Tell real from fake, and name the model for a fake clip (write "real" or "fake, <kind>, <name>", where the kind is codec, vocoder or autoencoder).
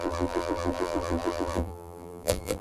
fake, vocoder, BigVGAN v2